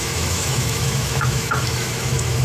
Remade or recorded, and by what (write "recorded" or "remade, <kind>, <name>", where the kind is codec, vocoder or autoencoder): remade, autoencoder, DAC-VAE